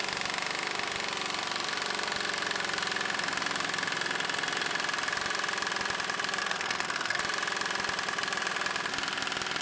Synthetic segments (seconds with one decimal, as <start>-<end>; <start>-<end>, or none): 6.4-7.2